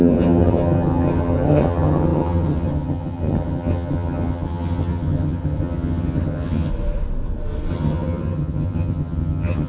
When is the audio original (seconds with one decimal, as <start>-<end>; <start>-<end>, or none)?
6.7-7.7